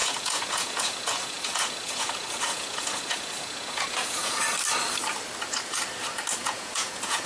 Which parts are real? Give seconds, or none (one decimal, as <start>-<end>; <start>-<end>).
4.4-6.4